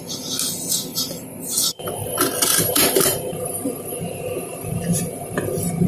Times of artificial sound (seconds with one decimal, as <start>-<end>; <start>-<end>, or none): 0.9-1.9; 2.5-5.9